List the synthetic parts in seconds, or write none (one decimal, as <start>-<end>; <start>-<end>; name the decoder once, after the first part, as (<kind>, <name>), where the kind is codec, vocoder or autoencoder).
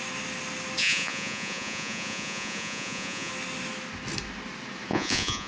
0.8-3.3 (vocoder, Vocos); 4.9-5.5